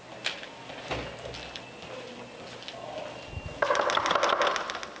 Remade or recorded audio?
recorded